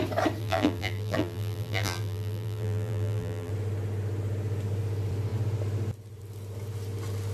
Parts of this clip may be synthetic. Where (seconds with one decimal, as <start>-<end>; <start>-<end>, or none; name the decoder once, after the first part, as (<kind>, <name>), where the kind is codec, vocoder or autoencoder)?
0.4-3.5 (vocoder, BigVGAN v2)